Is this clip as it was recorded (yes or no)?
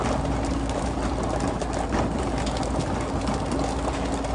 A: yes